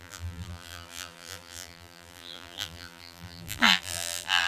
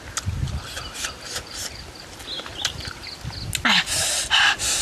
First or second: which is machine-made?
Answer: first